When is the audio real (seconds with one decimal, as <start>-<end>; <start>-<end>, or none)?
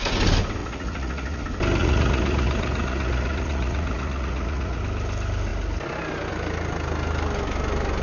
0.0-0.6; 1.4-1.8; 4.8-8.0